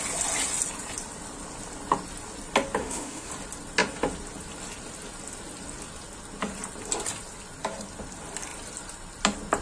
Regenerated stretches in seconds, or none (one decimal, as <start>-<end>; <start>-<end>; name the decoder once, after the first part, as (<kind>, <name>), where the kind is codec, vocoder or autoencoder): 2.8-3.3 (autoencoder, DAC-VAE)